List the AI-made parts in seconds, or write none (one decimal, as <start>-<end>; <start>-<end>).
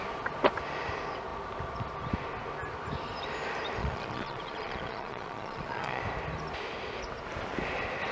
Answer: 3.8-6.0